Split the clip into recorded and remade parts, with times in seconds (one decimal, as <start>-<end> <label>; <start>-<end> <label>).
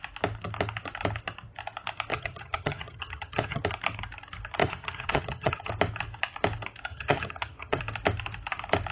0.0-2.1 recorded; 2.1-3.6 remade; 3.6-4.6 recorded; 4.6-5.7 remade; 5.7-6.9 recorded; 6.9-7.8 remade; 7.8-8.9 recorded